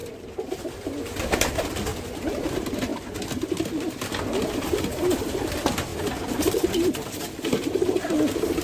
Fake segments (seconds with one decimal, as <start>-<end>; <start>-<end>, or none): 1.3-1.9; 2.4-2.9; 4.8-5.9; 7.6-8.6